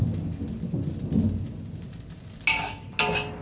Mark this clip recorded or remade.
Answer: recorded